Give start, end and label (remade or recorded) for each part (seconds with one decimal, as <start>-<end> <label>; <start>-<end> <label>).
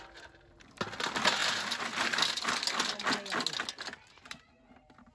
0.0-5.1 recorded